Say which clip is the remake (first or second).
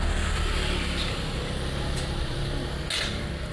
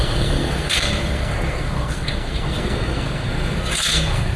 second